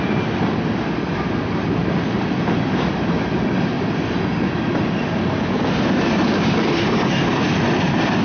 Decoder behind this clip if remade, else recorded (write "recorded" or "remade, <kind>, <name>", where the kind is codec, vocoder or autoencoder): recorded